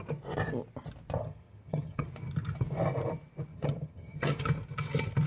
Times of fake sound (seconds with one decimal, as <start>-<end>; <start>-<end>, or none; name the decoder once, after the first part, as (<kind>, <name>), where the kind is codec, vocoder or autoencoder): 1.2-2.1 (vocoder, HiFi-GAN); 3.5-4.4